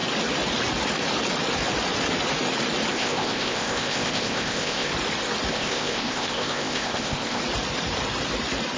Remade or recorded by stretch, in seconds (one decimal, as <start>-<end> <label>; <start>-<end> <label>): 0.0-2.9 recorded; 2.9-4.9 remade; 4.9-5.5 recorded; 5.5-7.4 remade; 7.4-8.8 recorded